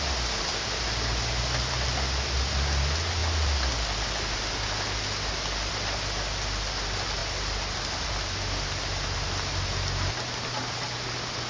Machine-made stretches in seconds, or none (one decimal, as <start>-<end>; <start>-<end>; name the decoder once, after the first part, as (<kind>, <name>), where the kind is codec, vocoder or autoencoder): none